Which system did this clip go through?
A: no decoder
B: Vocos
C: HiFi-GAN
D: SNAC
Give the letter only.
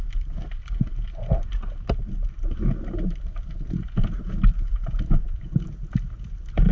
A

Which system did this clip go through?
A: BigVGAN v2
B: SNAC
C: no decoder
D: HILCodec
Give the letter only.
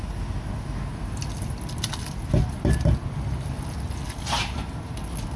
C